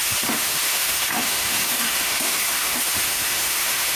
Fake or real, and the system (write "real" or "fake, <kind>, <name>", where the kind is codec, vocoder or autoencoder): fake, autoencoder, DAC-VAE